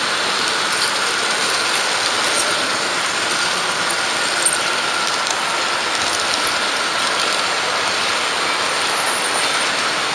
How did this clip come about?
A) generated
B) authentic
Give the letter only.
B